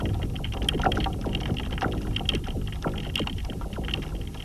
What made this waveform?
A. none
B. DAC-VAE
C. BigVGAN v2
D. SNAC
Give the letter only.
A